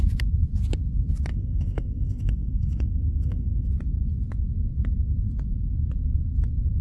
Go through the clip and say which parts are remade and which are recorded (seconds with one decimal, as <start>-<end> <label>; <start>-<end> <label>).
0.0-1.3 recorded; 1.3-3.7 remade; 3.7-6.8 recorded